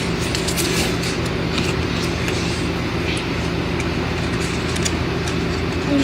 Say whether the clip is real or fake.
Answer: real